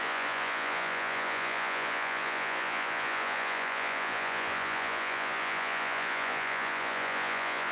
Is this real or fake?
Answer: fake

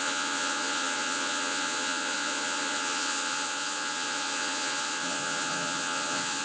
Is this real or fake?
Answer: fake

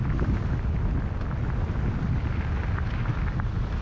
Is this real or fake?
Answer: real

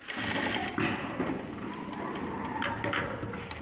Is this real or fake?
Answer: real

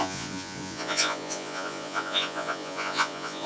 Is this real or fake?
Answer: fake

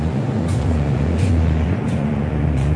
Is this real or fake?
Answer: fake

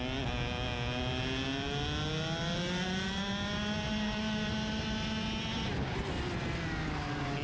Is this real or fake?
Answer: real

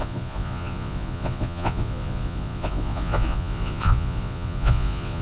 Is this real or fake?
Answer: fake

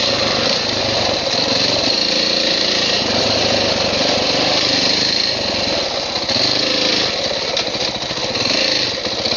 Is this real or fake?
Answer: real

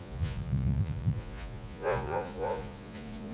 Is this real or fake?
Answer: fake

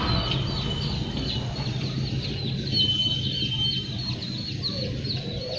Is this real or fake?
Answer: real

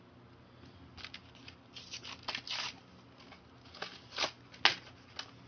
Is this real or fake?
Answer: real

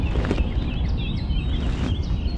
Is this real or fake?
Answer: real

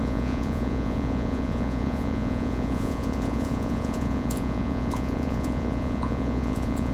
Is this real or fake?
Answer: fake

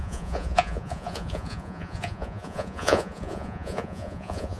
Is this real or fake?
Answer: fake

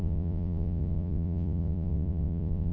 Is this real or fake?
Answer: fake